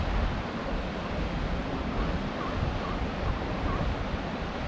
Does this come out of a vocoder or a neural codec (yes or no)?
no